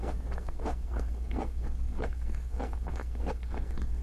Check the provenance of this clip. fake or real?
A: fake